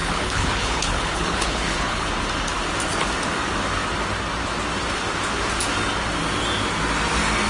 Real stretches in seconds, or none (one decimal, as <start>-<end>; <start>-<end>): 2.1-7.5